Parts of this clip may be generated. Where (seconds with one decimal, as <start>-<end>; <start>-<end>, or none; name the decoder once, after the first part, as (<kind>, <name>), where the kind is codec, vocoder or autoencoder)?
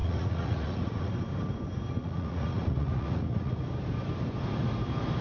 0.0-1.1 (vocoder, Vocos); 2.0-3.6